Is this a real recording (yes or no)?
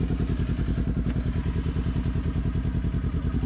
yes